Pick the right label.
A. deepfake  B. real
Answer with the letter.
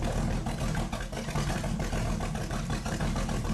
B